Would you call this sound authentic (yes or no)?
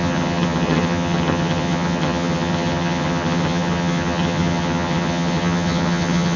no